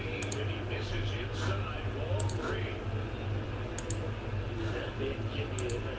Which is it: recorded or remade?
recorded